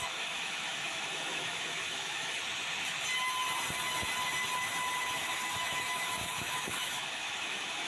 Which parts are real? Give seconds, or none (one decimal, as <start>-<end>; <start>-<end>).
2.4-5.0